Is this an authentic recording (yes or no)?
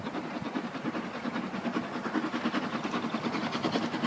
yes